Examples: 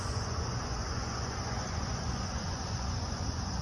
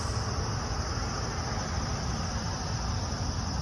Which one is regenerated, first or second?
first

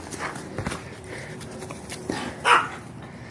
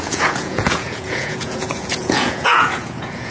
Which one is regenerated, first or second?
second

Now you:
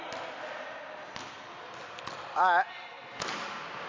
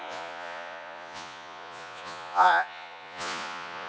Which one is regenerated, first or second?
second